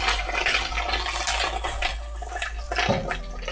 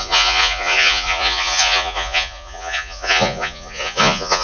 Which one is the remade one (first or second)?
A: second